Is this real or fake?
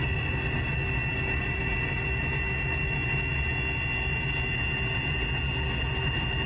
real